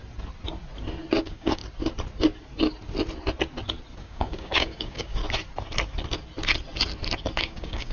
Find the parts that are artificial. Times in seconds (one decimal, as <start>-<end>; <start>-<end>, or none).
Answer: 1.2-1.6; 4.0-5.2; 7.4-7.9